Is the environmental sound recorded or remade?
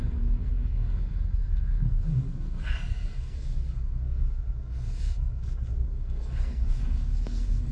remade